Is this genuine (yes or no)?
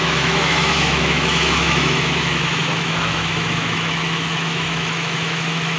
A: no